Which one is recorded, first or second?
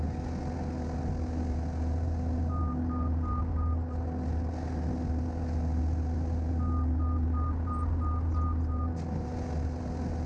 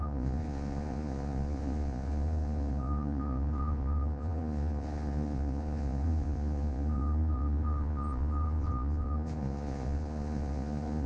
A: first